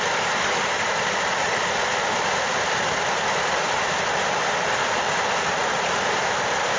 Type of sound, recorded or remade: remade